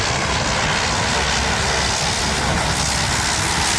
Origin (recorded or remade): recorded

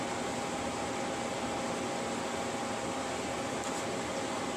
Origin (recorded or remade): recorded